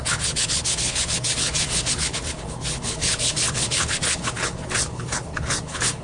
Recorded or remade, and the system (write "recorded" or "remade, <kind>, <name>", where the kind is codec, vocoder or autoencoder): remade, codec, HILCodec